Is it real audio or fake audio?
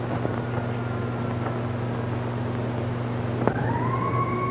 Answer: real